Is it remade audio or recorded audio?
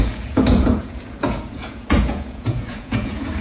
remade